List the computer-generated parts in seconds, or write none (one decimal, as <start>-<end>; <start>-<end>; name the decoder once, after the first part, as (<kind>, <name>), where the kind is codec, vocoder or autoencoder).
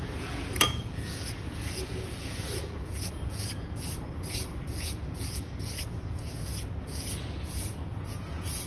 0.0-8.7 (vocoder, Vocos)